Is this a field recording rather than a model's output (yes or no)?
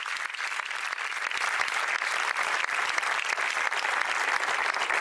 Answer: yes